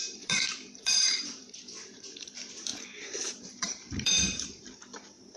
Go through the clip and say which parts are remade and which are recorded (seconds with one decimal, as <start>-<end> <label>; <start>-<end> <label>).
0.0-5.4 remade